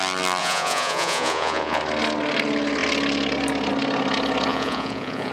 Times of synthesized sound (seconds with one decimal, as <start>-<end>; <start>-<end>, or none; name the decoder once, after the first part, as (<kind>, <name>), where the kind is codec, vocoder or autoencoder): 0.4-1.8 (vocoder, Vocos); 4.5-5.3